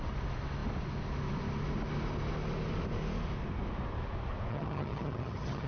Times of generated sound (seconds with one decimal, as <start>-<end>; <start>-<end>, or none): 4.5-5.7